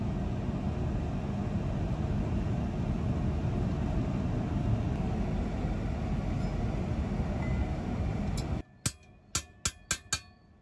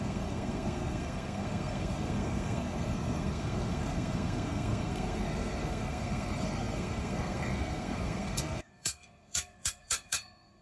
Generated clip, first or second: second